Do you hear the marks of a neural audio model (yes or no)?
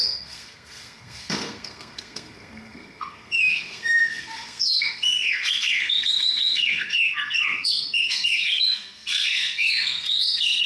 yes